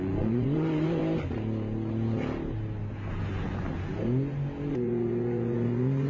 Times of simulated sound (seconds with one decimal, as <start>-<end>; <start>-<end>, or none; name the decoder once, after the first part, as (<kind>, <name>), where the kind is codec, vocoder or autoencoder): 0.0-1.0 (vocoder, Vocos); 4.7-6.1